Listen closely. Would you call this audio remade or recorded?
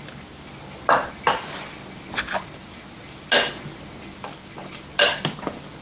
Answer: recorded